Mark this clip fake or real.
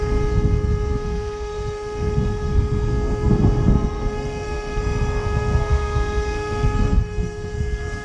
fake